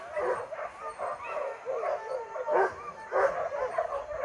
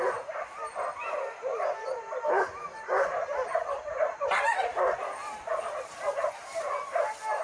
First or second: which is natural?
first